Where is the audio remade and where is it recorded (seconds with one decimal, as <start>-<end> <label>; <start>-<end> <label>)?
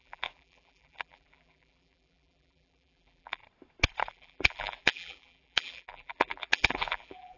0.0-3.4 remade; 3.4-4.1 recorded; 4.1-7.4 remade